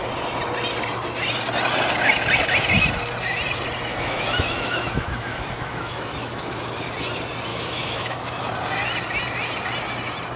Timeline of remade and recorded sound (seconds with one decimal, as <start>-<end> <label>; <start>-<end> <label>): 0.0-3.9 recorded; 3.9-6.9 remade; 6.9-7.5 recorded; 7.5-8.4 remade; 8.4-10.4 recorded